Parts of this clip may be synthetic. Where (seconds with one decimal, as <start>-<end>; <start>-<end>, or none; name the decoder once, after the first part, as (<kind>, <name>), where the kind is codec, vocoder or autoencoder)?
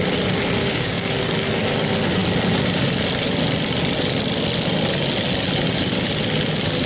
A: 0.6-1.1 (codec, DAC)